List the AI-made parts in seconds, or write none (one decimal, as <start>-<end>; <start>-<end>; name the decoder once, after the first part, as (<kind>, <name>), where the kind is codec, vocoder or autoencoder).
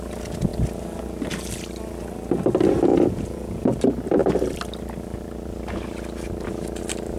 2.9-3.6 (vocoder, Vocos)